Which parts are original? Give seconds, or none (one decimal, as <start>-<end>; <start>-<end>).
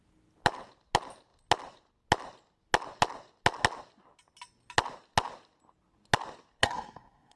0.0-6.6